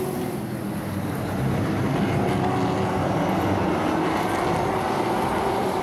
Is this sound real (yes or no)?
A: yes